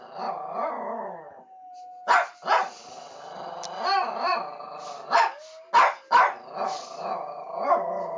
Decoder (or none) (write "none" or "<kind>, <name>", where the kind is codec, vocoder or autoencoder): none